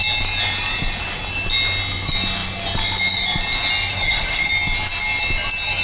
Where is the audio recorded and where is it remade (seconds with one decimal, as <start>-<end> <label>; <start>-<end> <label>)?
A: 0.0-3.9 recorded; 3.9-4.5 remade; 4.5-5.8 recorded